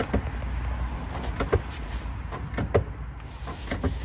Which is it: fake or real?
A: real